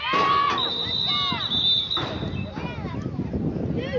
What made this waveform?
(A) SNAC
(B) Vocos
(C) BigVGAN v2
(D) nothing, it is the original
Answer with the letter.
D